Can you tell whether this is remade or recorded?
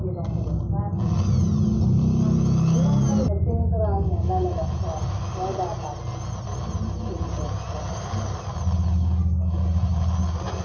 recorded